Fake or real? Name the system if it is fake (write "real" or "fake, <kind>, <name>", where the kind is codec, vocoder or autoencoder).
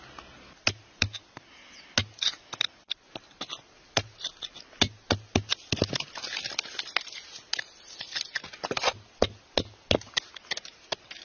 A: real